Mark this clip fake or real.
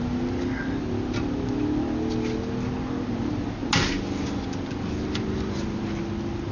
real